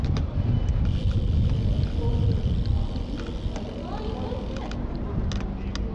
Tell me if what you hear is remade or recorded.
recorded